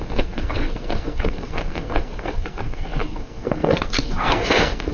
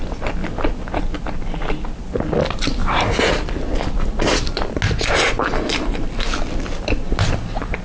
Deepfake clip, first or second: first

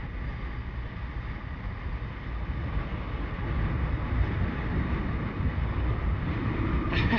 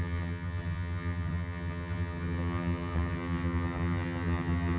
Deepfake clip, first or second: second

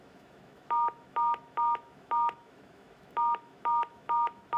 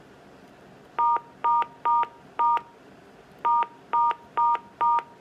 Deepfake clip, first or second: first